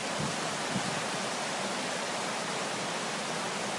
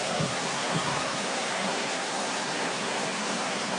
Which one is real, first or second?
first